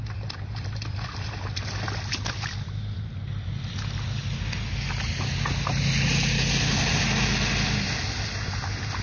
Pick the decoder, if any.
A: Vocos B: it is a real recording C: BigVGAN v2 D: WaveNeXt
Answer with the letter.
B